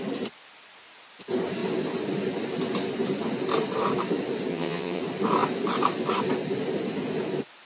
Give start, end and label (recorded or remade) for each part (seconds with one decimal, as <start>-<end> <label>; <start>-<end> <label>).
0.0-4.5 recorded; 4.5-5.0 remade; 5.0-7.6 recorded